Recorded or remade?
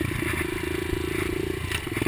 remade